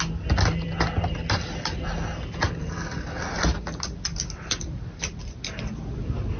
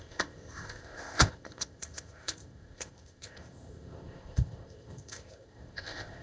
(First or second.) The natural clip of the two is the first